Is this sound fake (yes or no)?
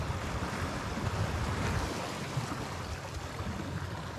no